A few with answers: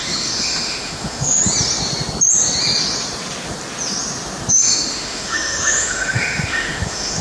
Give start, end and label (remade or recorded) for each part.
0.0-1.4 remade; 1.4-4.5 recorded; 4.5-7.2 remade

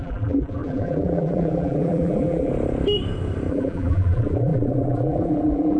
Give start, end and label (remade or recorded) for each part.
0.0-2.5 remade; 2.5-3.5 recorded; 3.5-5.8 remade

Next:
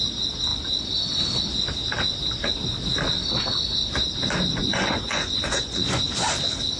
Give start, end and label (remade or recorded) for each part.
0.0-4.6 recorded; 4.6-6.0 remade; 6.0-6.8 recorded

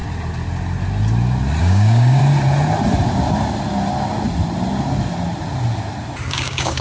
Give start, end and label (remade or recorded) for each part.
0.0-1.6 recorded; 1.6-2.2 remade; 2.2-6.3 recorded; 6.3-6.8 remade

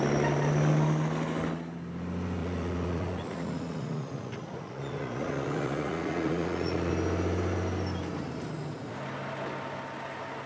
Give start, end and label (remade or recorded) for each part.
0.0-2.4 recorded; 2.4-6.9 remade; 6.9-10.5 recorded

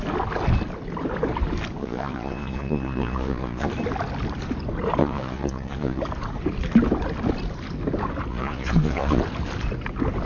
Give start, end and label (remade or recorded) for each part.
0.0-1.8 recorded; 1.8-3.7 remade; 3.7-5.0 recorded; 5.0-6.0 remade; 6.0-8.3 recorded; 8.3-9.2 remade; 9.2-10.3 recorded

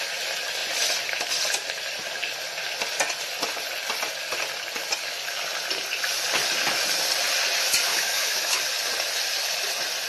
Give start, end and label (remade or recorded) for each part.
0.0-7.9 recorded; 7.9-8.6 remade; 8.6-10.1 recorded